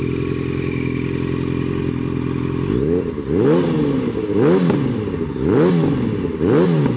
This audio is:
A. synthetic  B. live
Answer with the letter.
B